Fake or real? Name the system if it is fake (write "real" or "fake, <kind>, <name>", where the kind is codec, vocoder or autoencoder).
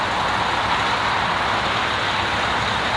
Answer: real